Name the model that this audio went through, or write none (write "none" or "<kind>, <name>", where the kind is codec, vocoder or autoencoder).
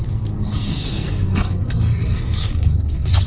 codec, SNAC